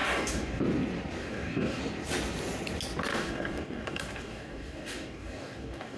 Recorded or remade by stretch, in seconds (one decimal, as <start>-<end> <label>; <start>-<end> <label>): 0.0-0.6 remade; 0.6-1.2 recorded; 1.2-1.8 remade; 1.8-3.1 recorded; 3.1-6.0 remade